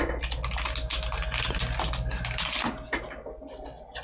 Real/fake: real